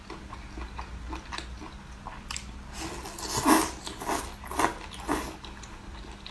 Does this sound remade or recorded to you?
recorded